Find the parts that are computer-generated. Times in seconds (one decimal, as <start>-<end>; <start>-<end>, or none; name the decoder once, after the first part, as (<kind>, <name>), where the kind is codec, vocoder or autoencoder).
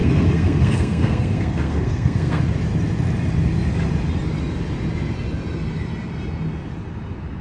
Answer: 0.0-2.4 (codec, SNAC)